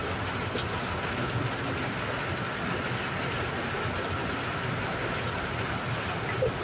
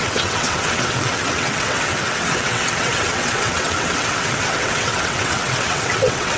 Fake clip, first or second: second